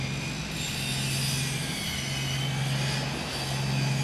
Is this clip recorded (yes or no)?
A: yes